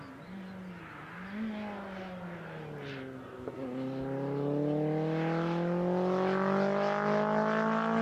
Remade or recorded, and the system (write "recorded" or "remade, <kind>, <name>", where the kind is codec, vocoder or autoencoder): recorded